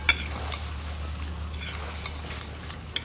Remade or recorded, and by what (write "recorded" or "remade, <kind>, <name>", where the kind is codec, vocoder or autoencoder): recorded